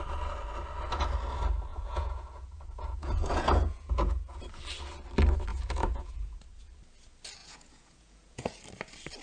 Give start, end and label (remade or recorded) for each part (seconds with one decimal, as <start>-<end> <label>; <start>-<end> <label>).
0.0-1.7 recorded; 1.7-4.4 remade; 4.4-5.5 recorded; 5.5-6.4 remade; 6.4-7.4 recorded; 7.4-8.6 remade; 8.6-9.2 recorded